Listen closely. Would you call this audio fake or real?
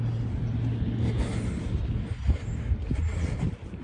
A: real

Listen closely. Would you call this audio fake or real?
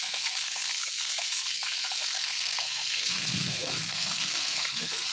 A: fake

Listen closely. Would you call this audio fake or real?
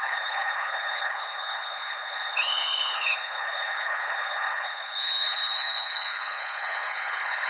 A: fake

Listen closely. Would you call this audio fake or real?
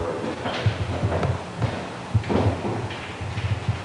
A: real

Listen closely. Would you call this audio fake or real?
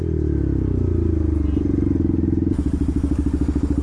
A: real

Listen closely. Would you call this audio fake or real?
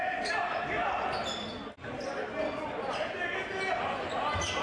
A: real